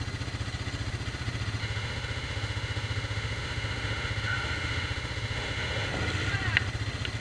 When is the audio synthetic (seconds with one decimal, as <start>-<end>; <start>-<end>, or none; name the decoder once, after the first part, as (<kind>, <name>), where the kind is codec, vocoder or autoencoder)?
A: 1.6-5.9 (autoencoder, DAC-VAE)